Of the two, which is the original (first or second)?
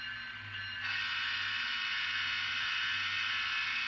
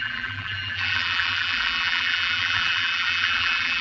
first